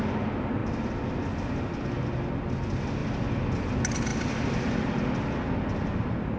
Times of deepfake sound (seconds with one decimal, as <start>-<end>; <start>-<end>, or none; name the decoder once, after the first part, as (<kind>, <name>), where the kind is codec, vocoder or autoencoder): none

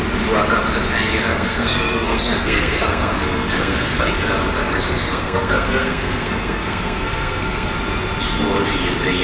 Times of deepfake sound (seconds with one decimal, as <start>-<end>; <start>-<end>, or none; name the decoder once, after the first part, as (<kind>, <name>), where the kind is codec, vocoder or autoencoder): 1.3-4.0 (codec, SNAC); 4.6-7.7

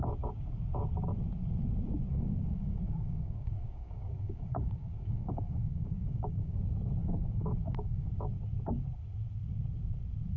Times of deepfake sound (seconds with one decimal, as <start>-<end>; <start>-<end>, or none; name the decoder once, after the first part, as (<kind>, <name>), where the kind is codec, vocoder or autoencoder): 2.1-6.6 (codec, DAC); 7.0-8.1

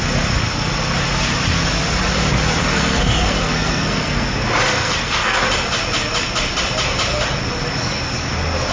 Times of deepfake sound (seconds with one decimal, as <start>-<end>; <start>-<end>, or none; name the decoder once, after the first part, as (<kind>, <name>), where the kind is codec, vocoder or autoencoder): 2.6-4.3 (codec, SNAC); 4.7-5.4

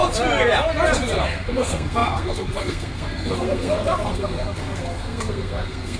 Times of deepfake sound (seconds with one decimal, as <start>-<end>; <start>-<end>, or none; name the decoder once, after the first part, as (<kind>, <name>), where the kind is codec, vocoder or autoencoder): 1.2-6.0 (codec, SNAC)